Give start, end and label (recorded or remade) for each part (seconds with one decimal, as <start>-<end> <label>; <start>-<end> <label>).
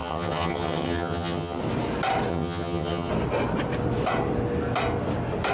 0.0-1.6 remade; 1.6-2.3 recorded; 2.3-3.1 remade; 3.1-5.5 recorded